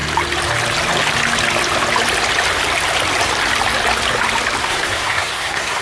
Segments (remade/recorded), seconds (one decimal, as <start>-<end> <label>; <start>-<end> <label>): 0.0-4.6 recorded; 4.6-5.8 remade